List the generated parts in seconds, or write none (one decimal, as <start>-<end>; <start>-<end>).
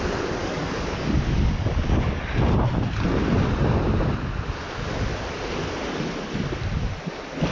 0.4-2.2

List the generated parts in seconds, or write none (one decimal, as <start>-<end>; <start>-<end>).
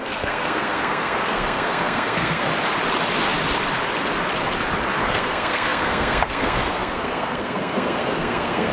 0.0-2.5; 5.0-8.7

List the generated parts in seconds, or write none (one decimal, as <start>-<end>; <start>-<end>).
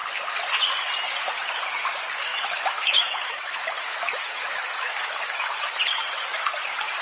2.3-5.8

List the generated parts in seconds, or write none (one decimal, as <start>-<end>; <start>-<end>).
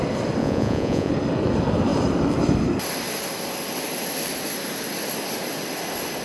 0.4-1.1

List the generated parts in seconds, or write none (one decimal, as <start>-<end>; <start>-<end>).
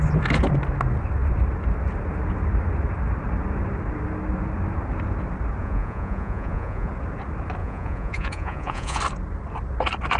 5.6-6.9; 7.6-9.0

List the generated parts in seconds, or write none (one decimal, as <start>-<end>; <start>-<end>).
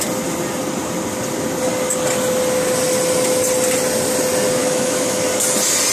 4.6-5.2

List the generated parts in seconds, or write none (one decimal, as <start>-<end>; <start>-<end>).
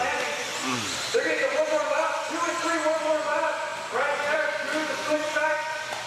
0.0-6.1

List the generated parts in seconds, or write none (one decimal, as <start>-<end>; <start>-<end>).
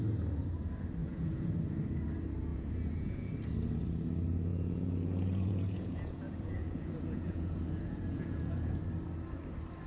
1.0-1.5; 2.5-3.3; 4.5-8.8